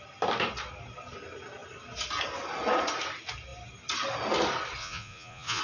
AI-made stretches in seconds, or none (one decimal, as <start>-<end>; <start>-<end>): 4.8-5.6